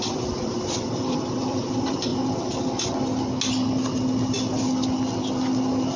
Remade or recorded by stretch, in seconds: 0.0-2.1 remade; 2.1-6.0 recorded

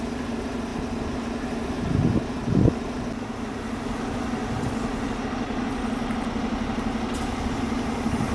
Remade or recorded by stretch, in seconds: 0.0-8.3 recorded

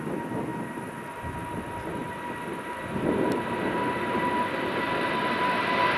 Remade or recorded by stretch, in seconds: 0.0-6.0 recorded